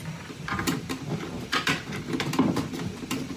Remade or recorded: recorded